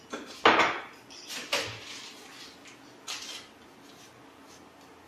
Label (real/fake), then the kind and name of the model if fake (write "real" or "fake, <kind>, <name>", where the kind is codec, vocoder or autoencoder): real